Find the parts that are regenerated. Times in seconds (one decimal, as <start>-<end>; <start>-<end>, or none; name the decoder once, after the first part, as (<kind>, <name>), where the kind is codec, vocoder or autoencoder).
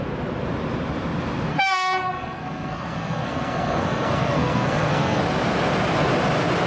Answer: 1.5-5.2 (codec, SNAC)